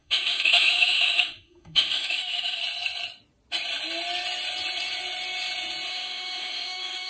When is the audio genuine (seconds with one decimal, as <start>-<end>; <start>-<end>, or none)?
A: 2.6-5.9